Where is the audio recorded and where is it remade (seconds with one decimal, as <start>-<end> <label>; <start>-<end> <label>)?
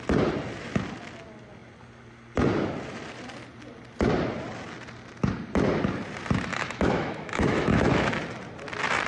0.0-6.5 recorded; 6.5-8.1 remade; 8.1-9.1 recorded